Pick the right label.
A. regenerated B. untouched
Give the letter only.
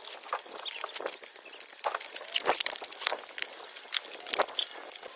B